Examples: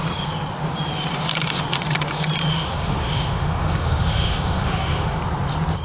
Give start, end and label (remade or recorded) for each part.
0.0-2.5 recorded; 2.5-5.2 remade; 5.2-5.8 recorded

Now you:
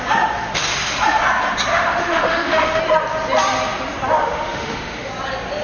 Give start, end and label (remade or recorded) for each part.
0.0-1.7 recorded; 1.7-2.8 remade; 2.8-4.2 recorded; 4.2-5.1 remade; 5.1-5.6 recorded

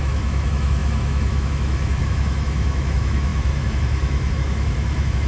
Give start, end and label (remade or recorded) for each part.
0.0-5.3 remade

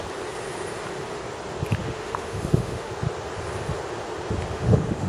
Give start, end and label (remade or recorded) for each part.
0.0-1.8 recorded; 1.8-2.9 remade; 2.9-4.5 recorded; 4.5-5.1 remade